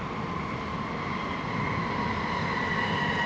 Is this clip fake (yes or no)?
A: no